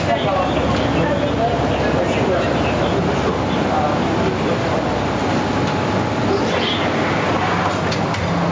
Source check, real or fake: real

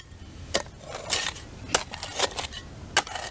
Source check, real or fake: real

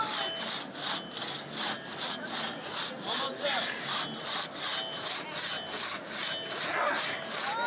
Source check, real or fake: real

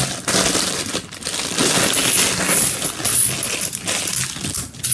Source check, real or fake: real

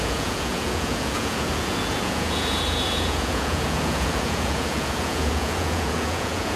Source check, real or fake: fake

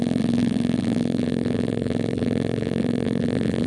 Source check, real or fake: fake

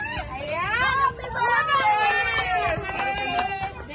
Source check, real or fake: fake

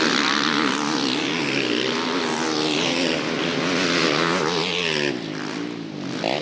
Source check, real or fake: real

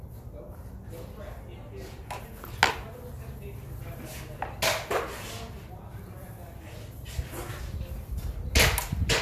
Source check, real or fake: real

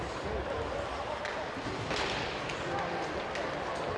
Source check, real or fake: real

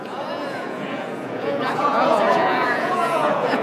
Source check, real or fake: fake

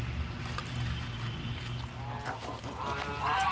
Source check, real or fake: real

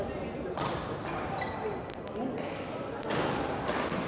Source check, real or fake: real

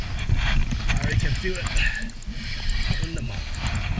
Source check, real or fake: real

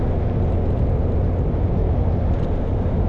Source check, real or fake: real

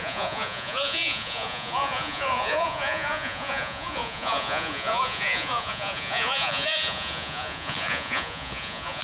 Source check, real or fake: fake